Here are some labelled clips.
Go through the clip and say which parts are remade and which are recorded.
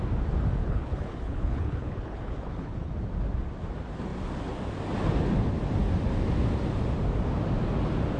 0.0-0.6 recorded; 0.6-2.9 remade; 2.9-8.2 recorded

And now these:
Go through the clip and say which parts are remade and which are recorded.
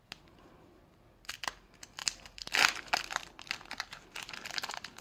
0.0-2.0 recorded; 2.0-4.3 remade; 4.3-5.0 recorded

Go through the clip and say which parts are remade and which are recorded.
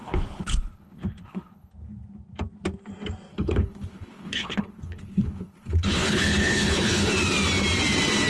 0.0-1.7 remade; 1.7-3.3 recorded; 3.3-7.1 remade; 7.1-8.3 recorded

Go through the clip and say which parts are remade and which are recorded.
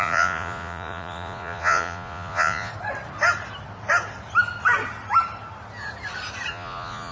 0.0-2.7 remade; 2.7-6.5 recorded; 6.5-7.1 remade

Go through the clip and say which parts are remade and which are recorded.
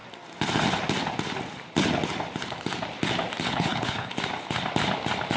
0.0-3.4 recorded; 3.4-4.1 remade; 4.1-5.4 recorded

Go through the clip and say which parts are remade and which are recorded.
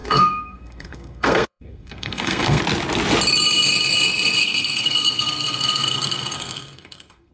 0.0-2.6 remade; 2.6-4.4 recorded; 4.4-7.3 remade